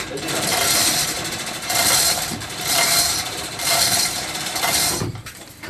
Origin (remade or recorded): remade